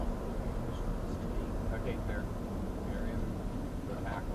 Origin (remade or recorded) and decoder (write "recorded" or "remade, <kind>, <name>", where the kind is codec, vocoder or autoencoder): recorded